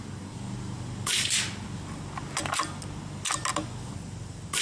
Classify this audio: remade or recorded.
recorded